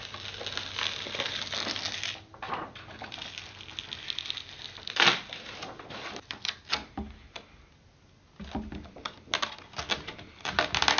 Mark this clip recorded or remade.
recorded